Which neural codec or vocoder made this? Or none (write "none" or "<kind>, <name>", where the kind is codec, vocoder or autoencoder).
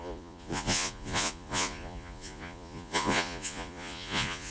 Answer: vocoder, Vocos